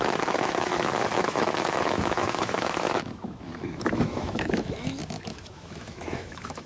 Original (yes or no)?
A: no